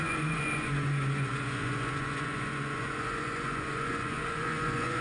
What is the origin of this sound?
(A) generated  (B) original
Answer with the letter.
A